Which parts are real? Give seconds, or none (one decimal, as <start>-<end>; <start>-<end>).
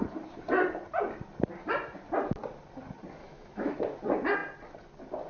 0.0-3.2; 3.7-5.3